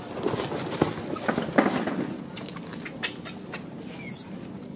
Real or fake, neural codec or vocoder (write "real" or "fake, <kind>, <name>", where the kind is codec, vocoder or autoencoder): real